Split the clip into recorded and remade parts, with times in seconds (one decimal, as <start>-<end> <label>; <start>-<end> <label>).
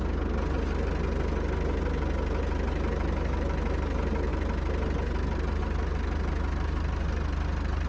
0.0-7.9 recorded